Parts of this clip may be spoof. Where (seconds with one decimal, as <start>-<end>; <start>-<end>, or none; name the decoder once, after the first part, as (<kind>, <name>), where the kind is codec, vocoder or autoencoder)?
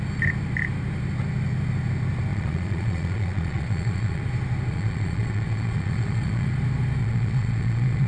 2.3-4.2 (vocoder, Vocos); 4.7-6.5; 7.0-8.1